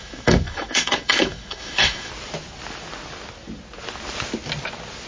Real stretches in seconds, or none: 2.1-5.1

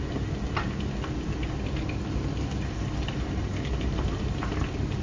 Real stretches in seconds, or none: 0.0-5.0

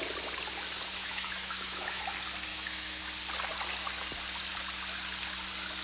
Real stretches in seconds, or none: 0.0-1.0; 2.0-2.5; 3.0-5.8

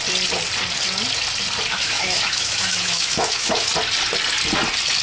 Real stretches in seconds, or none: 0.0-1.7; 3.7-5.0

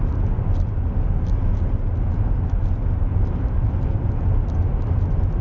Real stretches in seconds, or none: 0.0-3.1; 3.9-5.4

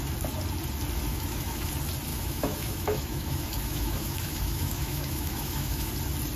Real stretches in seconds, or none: 0.0-1.1; 1.7-2.1; 5.9-6.4

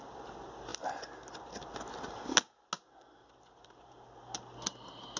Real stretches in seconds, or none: 0.0-5.2